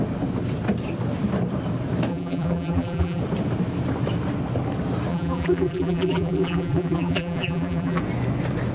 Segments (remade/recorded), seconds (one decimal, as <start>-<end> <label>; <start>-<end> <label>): 0.0-2.1 recorded; 2.1-3.2 remade; 3.2-5.1 recorded; 5.1-8.0 remade; 8.0-8.7 recorded